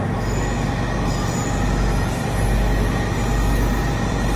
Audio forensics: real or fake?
real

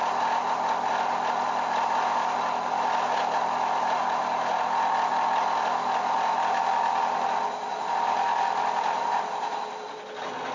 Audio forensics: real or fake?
real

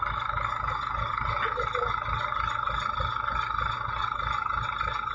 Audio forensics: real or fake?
real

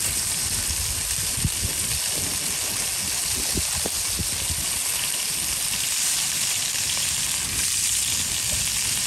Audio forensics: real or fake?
real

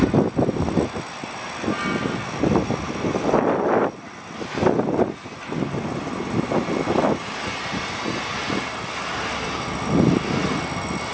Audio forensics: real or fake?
real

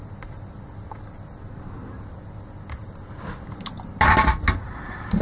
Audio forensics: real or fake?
real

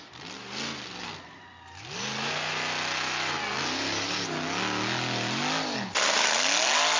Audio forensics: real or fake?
real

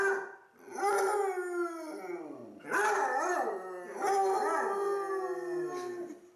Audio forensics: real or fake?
real